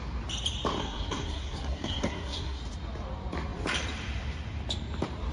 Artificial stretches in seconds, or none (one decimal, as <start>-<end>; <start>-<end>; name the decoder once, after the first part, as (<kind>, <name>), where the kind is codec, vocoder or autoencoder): 0.8-2.6 (codec, SNAC)

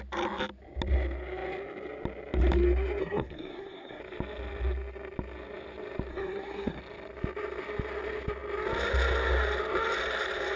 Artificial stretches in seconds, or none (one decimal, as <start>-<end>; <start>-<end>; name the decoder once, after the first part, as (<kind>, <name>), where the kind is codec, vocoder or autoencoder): 3.0-4.0 (codec, SNAC); 6.1-6.8

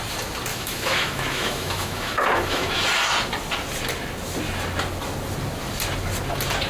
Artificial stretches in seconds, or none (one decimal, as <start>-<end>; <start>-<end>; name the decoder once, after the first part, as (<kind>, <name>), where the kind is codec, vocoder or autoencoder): 0.5-2.8 (autoencoder, DAC-VAE)

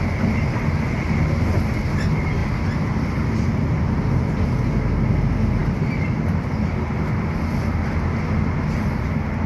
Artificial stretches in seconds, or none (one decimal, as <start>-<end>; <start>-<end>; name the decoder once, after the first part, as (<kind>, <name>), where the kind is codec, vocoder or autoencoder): none

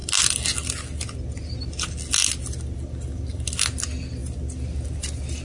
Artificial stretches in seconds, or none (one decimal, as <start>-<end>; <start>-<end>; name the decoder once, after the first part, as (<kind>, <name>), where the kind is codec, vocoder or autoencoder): none

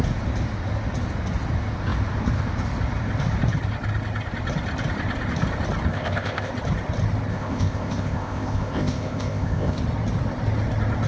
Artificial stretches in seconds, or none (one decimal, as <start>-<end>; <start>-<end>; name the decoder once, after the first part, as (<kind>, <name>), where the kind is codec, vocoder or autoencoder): 5.9-6.5 (codec, ZipCodec); 7.3-9.8